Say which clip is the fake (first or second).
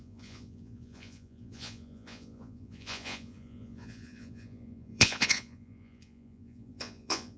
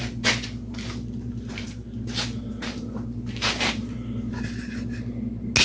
first